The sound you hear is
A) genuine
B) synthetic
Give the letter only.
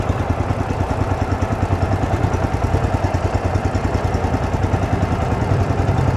A